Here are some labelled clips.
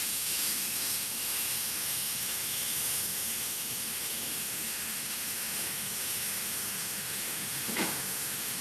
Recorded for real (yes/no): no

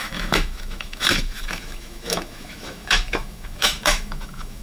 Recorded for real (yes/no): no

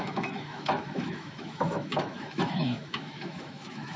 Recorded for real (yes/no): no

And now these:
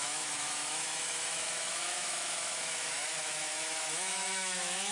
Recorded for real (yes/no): no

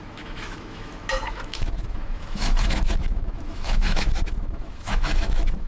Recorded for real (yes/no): no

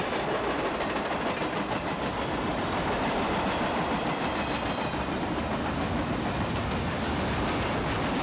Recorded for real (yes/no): yes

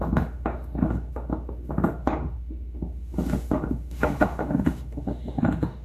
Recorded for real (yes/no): no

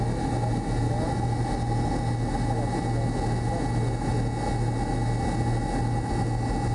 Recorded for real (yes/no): yes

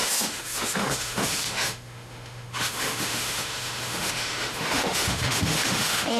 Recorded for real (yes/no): no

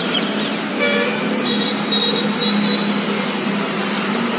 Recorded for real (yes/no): yes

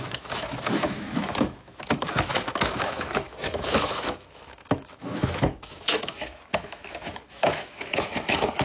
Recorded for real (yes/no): no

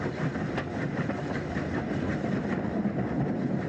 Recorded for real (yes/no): yes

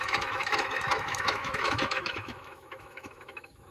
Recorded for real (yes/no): no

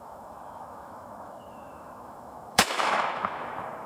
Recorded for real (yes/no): no